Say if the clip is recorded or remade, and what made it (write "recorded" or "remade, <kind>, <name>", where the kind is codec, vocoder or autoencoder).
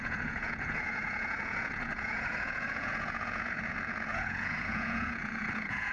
remade, vocoder, Vocos